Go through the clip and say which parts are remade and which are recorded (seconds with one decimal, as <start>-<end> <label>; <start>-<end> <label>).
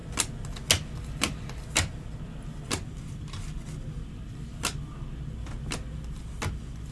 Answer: 0.0-6.9 recorded